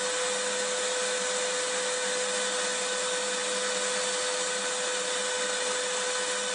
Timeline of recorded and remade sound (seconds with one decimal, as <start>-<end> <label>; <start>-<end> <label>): 0.0-6.5 recorded